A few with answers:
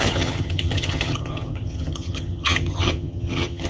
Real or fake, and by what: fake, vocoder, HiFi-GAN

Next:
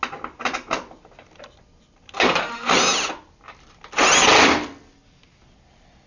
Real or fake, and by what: real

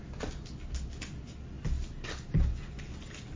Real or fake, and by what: real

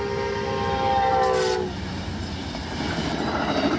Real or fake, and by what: real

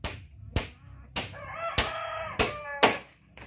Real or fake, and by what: real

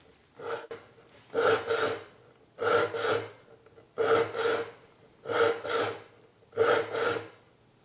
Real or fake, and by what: real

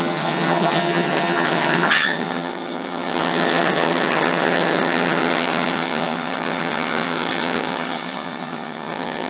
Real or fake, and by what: fake, vocoder, HiFi-GAN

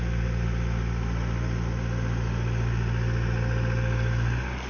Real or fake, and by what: real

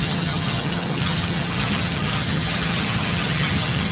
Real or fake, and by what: fake, vocoder, HiFi-GAN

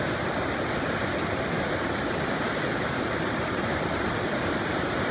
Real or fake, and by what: real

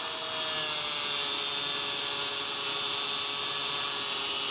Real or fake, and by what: real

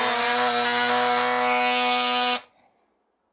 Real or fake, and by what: real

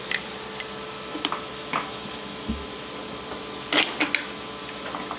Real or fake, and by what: real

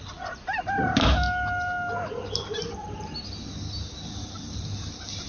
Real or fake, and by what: real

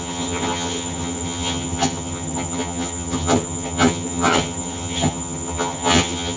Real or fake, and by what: fake, vocoder, HiFi-GAN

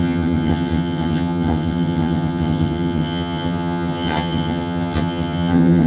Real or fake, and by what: fake, vocoder, HiFi-GAN